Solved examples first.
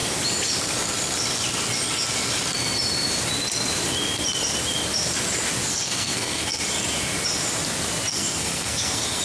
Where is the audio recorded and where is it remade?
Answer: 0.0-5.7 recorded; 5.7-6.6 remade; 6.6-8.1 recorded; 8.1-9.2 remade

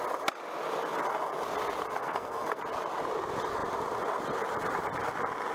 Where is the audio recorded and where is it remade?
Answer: 0.0-2.0 recorded; 2.0-2.6 remade; 2.6-5.5 recorded